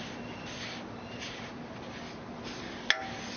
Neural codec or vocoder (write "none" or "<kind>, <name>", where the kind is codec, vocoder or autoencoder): none